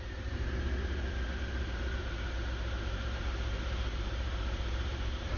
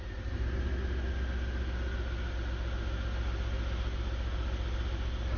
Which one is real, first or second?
second